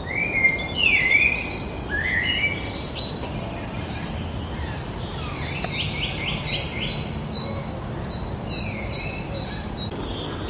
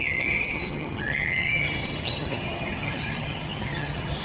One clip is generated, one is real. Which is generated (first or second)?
second